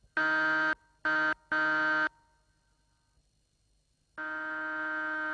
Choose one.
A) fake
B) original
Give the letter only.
B